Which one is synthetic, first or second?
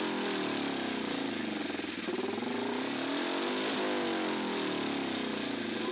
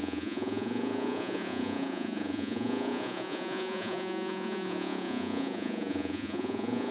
second